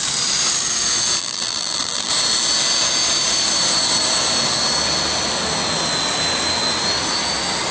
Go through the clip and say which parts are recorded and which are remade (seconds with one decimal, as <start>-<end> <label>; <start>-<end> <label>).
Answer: 0.0-1.2 recorded; 1.2-2.1 remade; 2.1-7.7 recorded